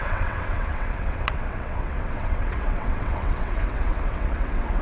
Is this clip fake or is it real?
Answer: fake